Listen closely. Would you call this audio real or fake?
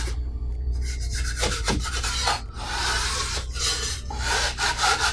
fake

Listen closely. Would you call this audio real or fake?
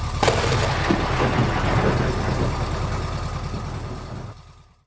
real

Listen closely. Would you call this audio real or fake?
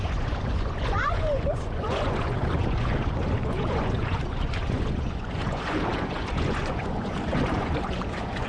fake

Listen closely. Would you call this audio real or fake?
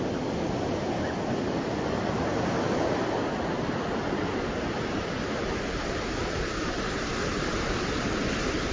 real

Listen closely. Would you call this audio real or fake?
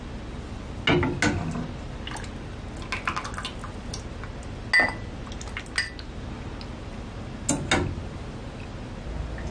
real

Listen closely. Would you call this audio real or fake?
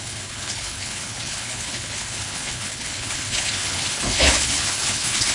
fake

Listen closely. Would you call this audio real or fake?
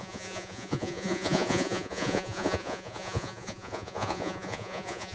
fake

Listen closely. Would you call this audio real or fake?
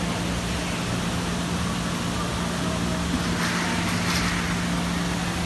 real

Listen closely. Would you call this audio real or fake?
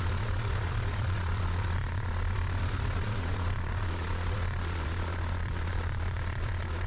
fake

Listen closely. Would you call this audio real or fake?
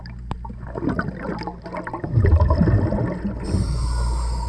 real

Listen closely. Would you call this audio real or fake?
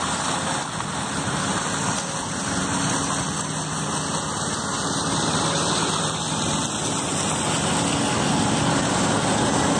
real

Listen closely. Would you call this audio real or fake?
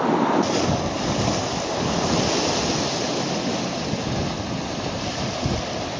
real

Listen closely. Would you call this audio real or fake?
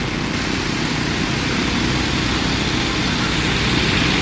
real